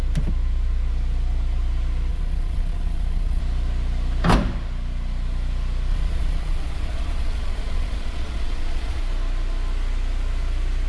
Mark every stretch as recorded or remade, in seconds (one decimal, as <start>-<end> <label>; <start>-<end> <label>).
0.0-2.1 recorded; 2.1-3.4 remade; 3.4-5.9 recorded; 5.9-9.0 remade; 9.0-10.9 recorded